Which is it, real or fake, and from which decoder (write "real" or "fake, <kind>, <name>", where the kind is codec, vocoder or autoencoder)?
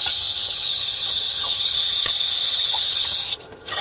fake, vocoder, HiFi-GAN